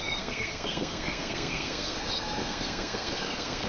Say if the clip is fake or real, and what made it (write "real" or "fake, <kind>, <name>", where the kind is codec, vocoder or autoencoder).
fake, codec, SNAC